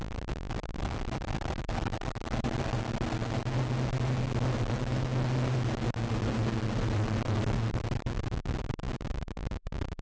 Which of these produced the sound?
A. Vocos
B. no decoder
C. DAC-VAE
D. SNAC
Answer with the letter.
B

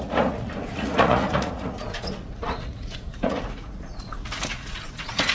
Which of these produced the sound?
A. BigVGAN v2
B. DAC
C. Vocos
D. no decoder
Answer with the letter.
C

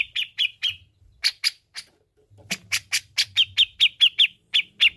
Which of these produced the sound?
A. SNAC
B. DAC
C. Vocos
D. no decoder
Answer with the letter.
D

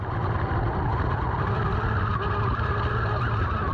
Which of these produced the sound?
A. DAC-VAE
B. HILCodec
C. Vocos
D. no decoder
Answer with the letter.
D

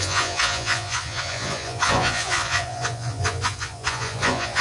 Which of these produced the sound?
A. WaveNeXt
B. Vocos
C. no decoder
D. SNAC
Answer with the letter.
B